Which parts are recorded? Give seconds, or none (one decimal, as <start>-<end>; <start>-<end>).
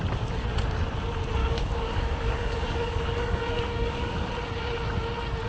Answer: 0.0-1.4; 4.3-5.5